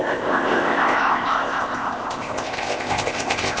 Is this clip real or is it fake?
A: fake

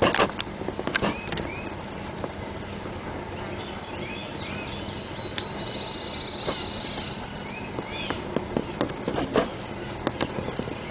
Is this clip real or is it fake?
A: real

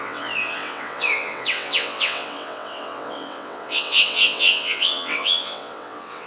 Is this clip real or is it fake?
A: fake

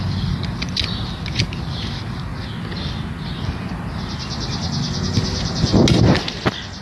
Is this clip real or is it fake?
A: real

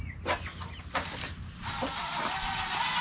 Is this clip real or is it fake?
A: real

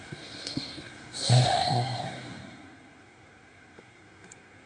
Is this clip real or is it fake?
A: fake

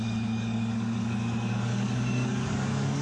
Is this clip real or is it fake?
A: fake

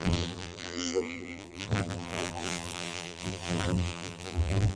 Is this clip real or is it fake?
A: fake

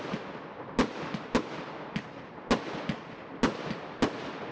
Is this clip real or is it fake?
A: real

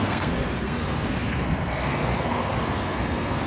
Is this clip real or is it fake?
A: fake